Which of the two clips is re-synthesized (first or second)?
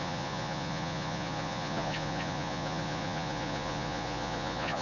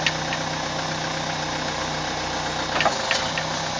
first